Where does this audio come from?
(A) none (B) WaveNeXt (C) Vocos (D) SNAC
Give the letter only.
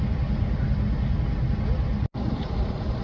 A